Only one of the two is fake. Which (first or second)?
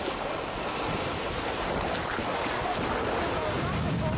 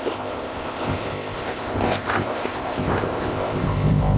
second